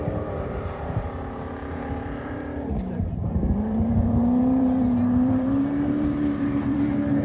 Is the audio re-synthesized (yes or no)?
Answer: yes